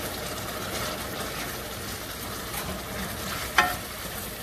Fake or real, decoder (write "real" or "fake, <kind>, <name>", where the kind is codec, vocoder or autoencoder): real